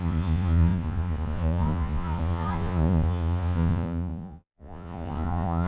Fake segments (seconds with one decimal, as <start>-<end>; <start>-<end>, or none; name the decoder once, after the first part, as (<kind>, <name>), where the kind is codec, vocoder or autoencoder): 0.0-5.7 (vocoder, Vocos)